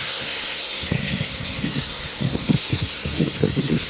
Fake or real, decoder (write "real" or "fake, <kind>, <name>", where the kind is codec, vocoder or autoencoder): fake, codec, SNAC